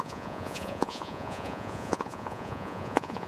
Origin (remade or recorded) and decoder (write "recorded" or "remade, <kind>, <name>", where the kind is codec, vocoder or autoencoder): remade, vocoder, Vocos